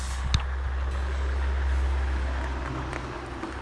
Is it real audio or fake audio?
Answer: real